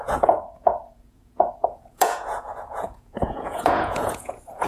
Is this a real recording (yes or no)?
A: no